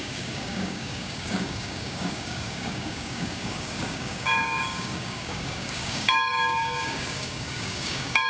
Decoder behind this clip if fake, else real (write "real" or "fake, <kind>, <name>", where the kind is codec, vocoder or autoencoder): fake, codec, DAC